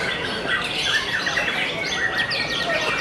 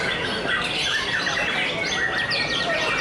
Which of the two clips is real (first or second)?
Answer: second